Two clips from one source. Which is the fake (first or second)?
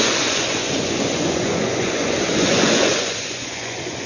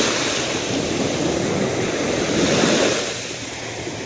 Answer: first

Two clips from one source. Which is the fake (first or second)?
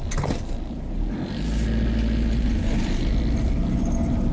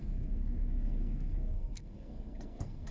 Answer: second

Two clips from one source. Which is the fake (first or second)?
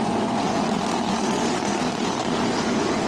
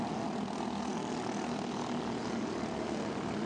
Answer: first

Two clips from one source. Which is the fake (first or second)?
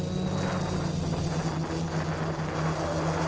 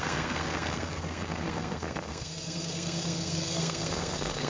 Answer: second